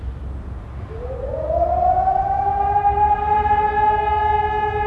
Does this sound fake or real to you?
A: real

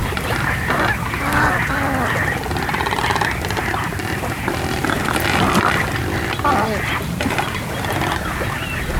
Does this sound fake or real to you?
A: real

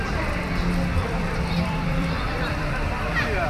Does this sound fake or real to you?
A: fake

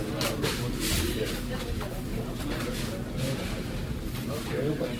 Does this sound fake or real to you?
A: real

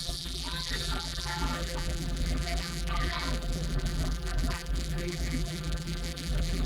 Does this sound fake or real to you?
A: fake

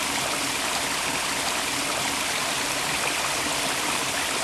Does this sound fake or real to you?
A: real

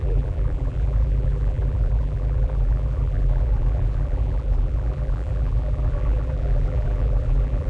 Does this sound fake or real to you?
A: fake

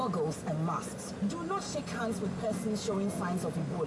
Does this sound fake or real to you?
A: real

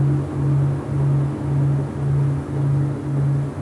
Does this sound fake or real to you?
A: real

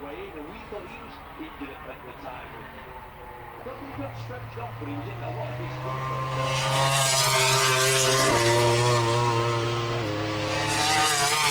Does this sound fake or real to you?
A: real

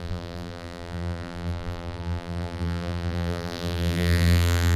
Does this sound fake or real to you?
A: fake